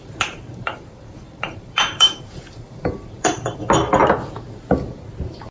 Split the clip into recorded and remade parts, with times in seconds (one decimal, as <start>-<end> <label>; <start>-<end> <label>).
0.0-4.0 remade; 4.0-5.5 recorded